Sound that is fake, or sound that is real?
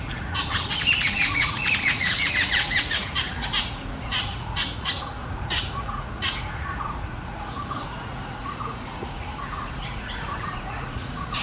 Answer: fake